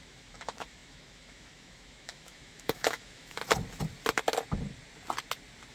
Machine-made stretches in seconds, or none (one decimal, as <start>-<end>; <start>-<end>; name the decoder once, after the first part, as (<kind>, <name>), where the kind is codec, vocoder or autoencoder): 0.0-3.4 (autoencoder, DAC-VAE)